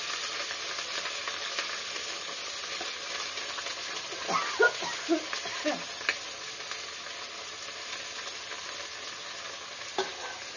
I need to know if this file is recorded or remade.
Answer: recorded